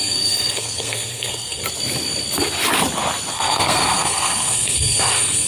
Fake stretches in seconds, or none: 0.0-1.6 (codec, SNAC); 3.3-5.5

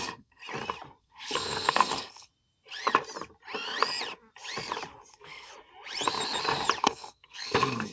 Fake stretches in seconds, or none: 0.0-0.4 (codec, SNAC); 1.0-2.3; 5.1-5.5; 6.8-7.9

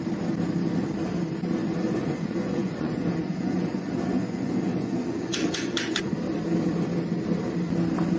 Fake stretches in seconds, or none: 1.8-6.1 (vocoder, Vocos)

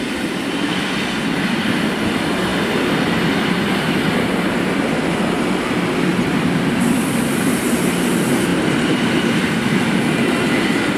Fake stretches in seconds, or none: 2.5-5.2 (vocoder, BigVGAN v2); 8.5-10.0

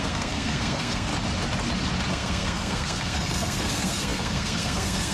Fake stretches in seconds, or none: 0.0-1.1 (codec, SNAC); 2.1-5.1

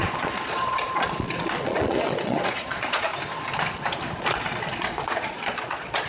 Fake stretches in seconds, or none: 0.0-3.1 (vocoder, Vocos); 4.2-6.1

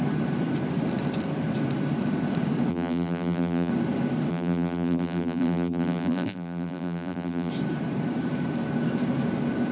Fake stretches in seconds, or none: 2.7-3.7 (vocoder, BigVGAN v2); 4.3-7.5